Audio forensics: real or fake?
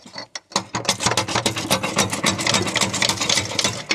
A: real